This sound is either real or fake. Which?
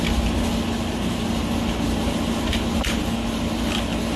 real